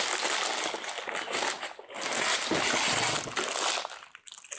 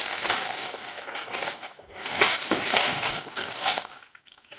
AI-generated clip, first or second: second